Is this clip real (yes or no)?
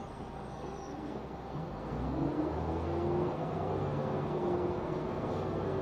no